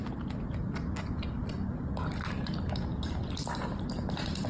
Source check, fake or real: real